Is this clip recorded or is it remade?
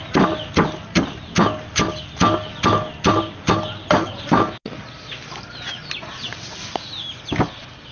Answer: recorded